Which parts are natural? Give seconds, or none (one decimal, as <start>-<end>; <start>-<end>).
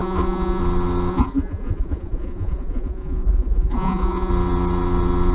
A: 0.6-1.1; 4.3-5.3